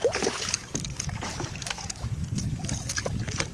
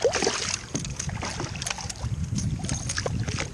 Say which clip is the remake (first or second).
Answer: first